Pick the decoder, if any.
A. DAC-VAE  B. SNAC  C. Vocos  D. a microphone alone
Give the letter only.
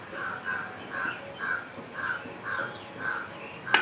D